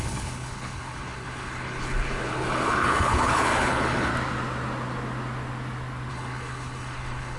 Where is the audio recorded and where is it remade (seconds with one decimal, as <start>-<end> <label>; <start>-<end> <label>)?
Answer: 0.0-4.1 remade; 4.1-6.1 recorded; 6.1-7.4 remade